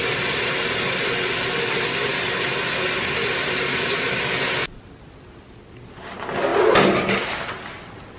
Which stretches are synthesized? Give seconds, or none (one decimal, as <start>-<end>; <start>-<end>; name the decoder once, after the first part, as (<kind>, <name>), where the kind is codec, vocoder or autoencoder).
none